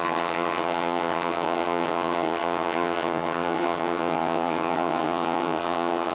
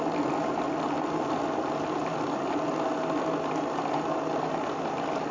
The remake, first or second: first